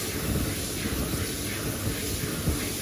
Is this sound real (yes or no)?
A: yes